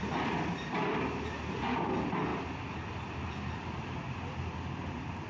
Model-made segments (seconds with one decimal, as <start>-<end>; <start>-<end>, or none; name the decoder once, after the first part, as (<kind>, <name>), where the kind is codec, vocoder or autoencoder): none